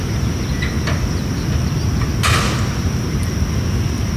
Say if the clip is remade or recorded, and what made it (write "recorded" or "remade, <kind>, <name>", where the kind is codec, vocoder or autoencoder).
recorded